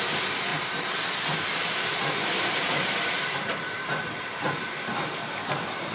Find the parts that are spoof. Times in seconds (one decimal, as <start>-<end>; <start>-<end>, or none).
0.5-4.0